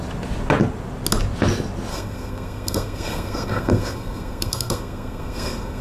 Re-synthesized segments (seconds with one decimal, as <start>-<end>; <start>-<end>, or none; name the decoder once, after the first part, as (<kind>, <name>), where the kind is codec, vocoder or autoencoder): 1.9-5.8 (codec, SNAC)